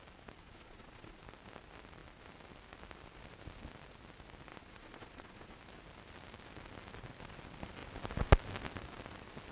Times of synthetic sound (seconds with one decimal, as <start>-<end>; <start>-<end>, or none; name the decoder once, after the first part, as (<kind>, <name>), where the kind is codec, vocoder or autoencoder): 0.4-1.2 (vocoder, Vocos); 4.5-5.6